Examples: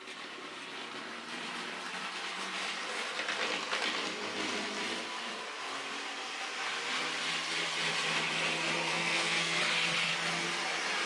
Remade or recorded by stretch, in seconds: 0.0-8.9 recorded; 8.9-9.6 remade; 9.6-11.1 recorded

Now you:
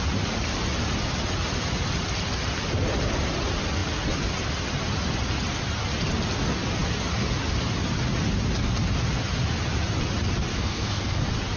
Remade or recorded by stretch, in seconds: 0.0-10.5 recorded; 10.5-11.2 remade; 11.2-11.6 recorded

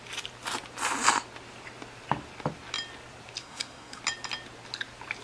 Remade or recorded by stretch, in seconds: 0.0-3.4 recorded; 3.4-4.0 remade; 4.0-5.2 recorded

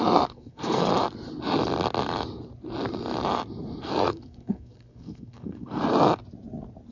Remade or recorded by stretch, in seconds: 0.0-0.9 remade; 0.9-3.8 recorded; 3.8-5.8 remade; 5.8-6.9 recorded